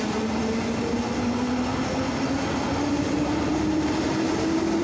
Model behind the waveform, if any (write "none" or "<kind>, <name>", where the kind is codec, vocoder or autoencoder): none